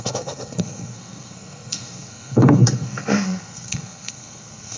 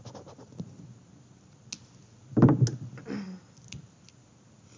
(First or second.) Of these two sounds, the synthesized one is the first